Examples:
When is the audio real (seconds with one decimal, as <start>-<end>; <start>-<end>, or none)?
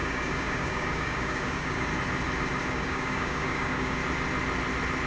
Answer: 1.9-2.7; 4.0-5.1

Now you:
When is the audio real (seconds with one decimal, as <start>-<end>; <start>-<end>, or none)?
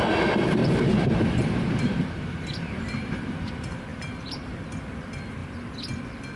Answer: 0.0-0.6; 2.0-3.9; 4.6-6.4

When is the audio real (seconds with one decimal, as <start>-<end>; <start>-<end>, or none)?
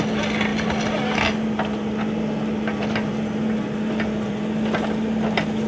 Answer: 0.0-5.7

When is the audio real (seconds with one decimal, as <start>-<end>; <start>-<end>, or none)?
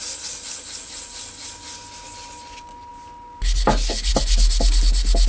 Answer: 0.0-5.3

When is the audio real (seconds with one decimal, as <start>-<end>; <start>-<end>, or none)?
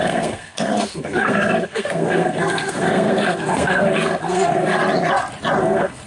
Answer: 4.8-5.6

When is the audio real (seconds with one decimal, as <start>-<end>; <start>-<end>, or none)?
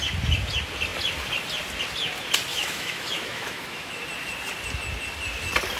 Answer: 0.0-2.5; 4.0-5.8